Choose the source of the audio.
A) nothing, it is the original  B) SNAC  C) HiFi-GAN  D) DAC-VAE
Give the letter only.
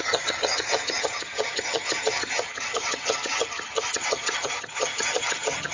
C